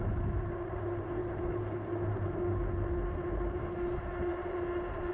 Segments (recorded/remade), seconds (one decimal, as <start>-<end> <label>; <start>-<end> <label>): 0.0-5.1 recorded

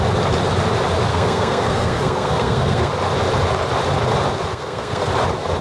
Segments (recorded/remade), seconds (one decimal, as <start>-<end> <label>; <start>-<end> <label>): 0.0-1.1 recorded; 1.1-2.9 remade; 2.9-4.5 recorded; 4.5-5.1 remade; 5.1-5.6 recorded

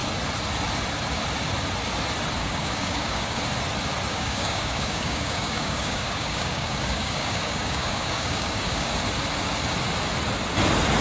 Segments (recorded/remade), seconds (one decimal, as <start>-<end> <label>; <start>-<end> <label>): 0.0-2.4 recorded; 2.4-3.4 remade; 3.4-4.1 recorded; 4.1-8.9 remade; 8.9-11.0 recorded

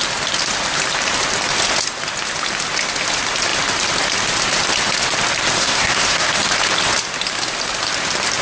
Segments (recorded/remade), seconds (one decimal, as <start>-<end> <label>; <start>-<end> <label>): 0.0-5.6 recorded; 5.6-6.3 remade; 6.3-8.4 recorded

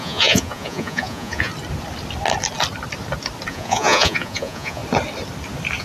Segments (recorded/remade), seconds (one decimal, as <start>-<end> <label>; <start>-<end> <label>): 0.0-1.5 remade; 1.5-3.5 recorded; 3.5-4.8 remade; 4.8-5.8 recorded